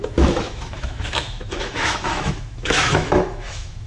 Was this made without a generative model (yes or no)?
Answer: no